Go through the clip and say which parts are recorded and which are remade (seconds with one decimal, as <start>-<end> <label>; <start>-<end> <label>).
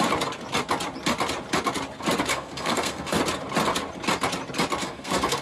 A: 0.0-2.3 recorded; 2.3-3.2 remade; 3.2-4.8 recorded; 4.8-5.4 remade